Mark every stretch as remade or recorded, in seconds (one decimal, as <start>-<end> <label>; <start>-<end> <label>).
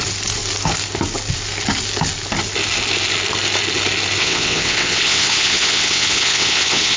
0.0-4.2 recorded; 4.2-7.0 remade